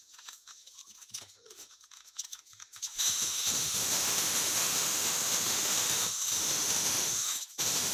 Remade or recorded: remade